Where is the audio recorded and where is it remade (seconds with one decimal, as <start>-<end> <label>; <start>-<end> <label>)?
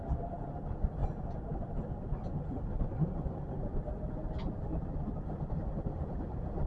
0.0-6.7 recorded